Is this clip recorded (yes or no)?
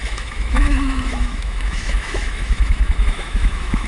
no